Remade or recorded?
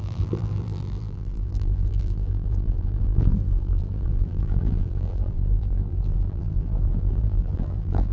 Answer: remade